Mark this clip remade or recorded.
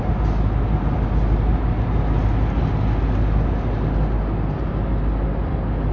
recorded